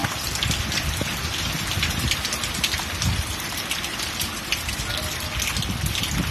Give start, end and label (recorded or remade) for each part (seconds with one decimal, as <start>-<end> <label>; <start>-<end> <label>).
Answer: 0.0-3.8 remade; 3.8-6.3 recorded